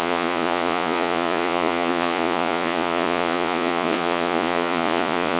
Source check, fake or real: fake